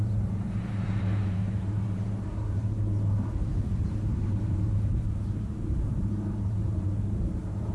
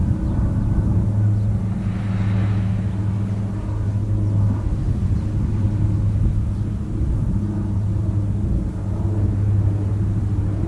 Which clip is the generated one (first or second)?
first